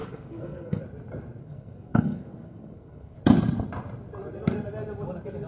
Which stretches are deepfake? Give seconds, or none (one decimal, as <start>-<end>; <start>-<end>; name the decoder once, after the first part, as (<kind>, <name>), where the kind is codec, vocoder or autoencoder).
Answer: 0.0-0.8 (codec, SNAC); 1.4-3.2